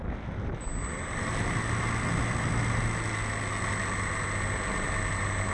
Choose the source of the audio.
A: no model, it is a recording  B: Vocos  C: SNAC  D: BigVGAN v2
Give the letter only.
A